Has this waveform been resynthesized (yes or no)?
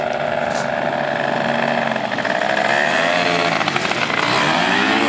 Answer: no